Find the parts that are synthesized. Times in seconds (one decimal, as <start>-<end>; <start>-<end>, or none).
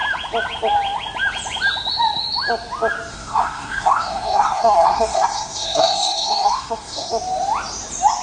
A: 3.1-7.1